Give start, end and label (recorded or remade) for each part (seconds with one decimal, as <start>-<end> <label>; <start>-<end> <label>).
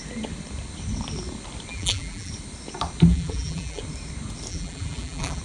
0.0-1.7 recorded; 1.7-2.3 remade; 2.3-3.1 recorded; 3.1-3.8 remade; 3.8-4.5 recorded; 4.5-5.4 remade